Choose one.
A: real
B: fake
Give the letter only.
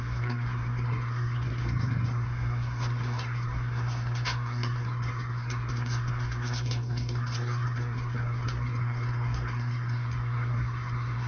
B